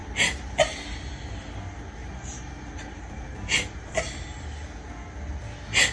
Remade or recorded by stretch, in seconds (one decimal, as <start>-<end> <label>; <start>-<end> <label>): 0.0-2.0 recorded; 2.0-4.4 remade; 4.4-5.9 recorded